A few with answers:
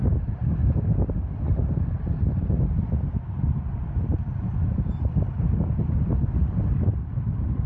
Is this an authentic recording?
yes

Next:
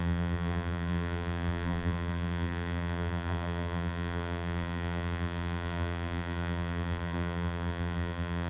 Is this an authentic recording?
no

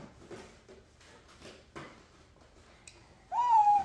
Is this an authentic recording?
yes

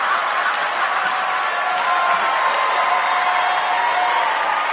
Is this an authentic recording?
yes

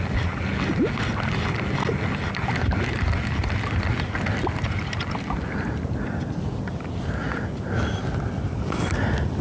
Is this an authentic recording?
yes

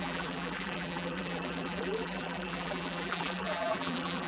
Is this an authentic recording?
no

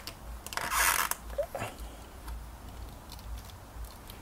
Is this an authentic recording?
yes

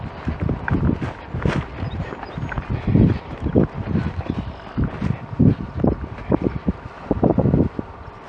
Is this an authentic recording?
yes